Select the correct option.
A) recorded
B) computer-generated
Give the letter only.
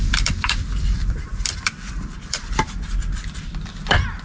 B